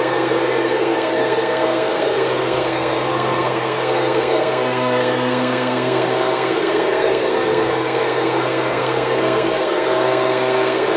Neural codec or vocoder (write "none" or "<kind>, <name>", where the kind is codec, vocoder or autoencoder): codec, SNAC